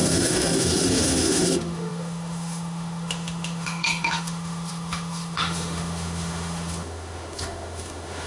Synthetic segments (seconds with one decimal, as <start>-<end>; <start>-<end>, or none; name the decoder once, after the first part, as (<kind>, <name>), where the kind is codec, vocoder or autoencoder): 0.0-8.3 (autoencoder, DAC-VAE)